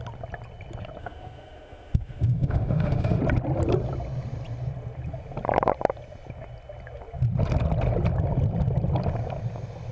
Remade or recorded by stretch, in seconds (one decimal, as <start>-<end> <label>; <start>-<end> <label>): 0.0-1.0 recorded; 1.0-3.2 remade; 3.2-9.9 recorded